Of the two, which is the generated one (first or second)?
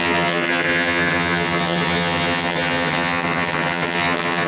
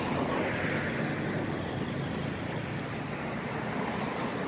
first